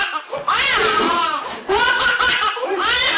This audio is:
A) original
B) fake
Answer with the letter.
B